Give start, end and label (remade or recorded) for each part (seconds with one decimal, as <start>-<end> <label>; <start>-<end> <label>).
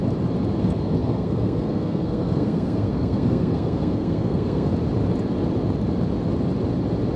0.0-0.6 recorded; 0.6-4.7 remade; 4.7-7.2 recorded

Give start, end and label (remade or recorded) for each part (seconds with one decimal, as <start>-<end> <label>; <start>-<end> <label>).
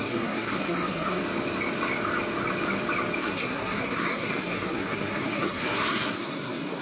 0.0-1.2 remade; 1.2-3.2 recorded; 3.2-6.8 remade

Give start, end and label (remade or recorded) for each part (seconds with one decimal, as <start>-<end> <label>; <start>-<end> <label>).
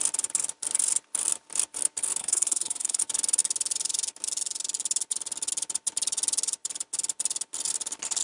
0.0-2.2 recorded; 2.2-3.0 remade; 3.0-8.2 recorded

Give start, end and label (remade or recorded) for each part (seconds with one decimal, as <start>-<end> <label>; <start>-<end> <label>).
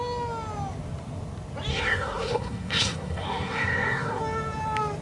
0.0-1.7 recorded; 1.7-4.2 remade; 4.2-5.0 recorded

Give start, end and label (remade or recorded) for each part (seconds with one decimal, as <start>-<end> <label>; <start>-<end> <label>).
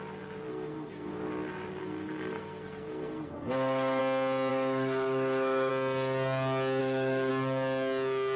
0.0-0.5 recorded; 0.5-1.1 remade; 1.1-1.8 recorded; 1.8-4.0 remade; 4.0-4.5 recorded; 4.5-5.7 remade; 5.7-6.8 recorded; 6.8-7.3 remade; 7.3-8.4 recorded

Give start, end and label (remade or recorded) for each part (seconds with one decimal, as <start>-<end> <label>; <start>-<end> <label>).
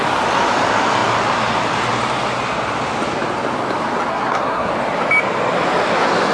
0.0-4.1 recorded; 4.1-4.7 remade; 4.7-6.3 recorded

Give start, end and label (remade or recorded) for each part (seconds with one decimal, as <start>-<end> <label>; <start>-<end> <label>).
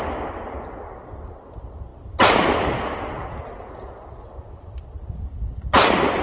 0.0-6.2 recorded